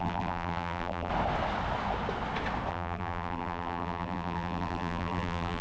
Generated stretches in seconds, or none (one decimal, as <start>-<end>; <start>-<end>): 0.0-1.1; 2.7-5.6